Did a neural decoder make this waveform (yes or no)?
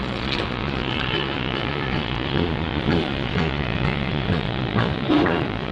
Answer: yes